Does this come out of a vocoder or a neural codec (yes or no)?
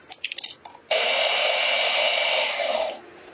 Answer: no